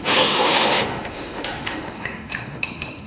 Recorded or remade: remade